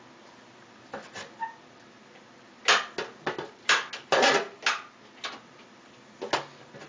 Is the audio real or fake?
real